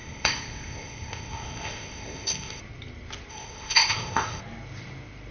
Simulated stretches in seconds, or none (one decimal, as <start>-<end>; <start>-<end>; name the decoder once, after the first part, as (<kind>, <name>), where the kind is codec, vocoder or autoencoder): 0.0-2.6 (codec, ZipCodec); 3.3-4.4